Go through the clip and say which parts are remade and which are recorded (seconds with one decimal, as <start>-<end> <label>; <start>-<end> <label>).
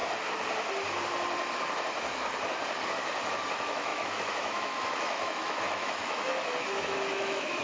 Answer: 0.0-3.5 recorded; 3.5-7.6 remade